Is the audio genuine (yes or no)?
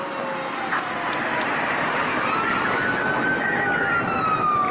yes